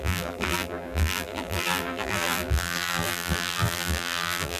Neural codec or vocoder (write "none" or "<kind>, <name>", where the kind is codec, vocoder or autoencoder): vocoder, BigVGAN v2